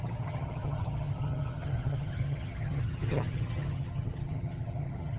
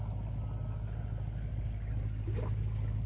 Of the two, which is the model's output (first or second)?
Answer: first